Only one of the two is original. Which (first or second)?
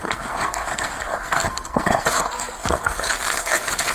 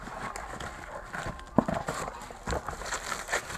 second